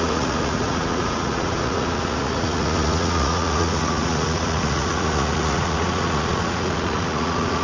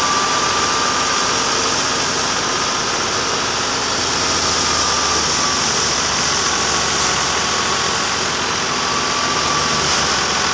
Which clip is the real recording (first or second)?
second